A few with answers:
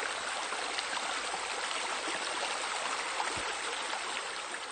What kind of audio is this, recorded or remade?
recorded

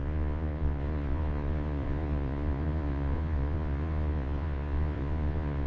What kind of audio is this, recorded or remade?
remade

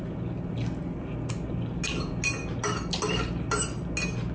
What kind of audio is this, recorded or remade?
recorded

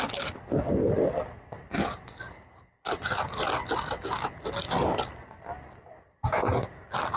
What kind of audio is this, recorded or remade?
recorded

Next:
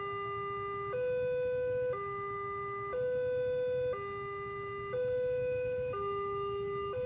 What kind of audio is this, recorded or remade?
recorded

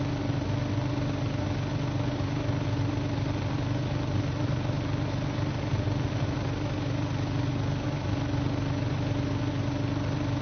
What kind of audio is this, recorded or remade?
recorded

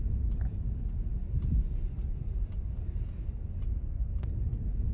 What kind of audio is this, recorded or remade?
recorded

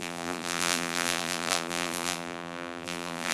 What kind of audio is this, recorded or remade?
remade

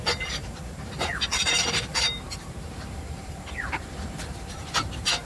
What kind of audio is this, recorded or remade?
remade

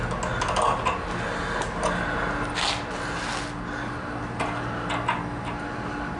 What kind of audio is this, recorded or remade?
recorded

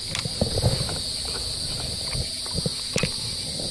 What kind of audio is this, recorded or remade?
recorded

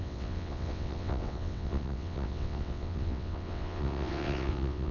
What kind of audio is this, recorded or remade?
remade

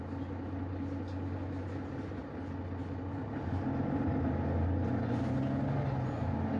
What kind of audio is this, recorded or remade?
recorded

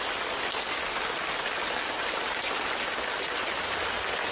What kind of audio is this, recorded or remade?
recorded